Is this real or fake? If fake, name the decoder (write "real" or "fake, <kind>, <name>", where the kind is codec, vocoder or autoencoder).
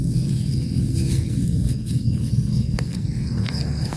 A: fake, codec, SNAC